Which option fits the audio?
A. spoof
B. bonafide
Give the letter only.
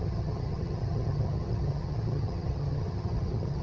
A